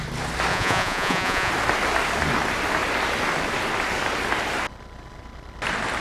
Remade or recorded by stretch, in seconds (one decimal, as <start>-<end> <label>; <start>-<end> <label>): 0.0-0.5 recorded; 0.5-1.5 remade; 1.5-6.0 recorded